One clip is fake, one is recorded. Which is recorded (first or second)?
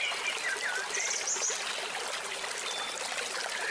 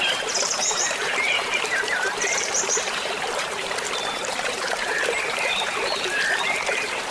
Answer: first